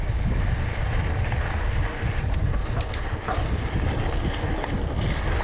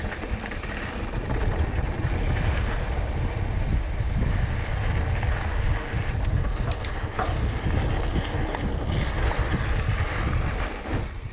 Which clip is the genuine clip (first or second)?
second